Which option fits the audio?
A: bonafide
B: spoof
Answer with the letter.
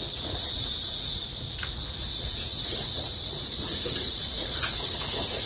B